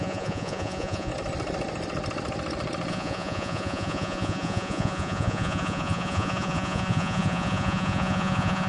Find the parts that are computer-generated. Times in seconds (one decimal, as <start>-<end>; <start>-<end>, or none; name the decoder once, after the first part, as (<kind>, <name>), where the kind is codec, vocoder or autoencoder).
0.0-1.1 (vocoder, Vocos); 2.9-8.7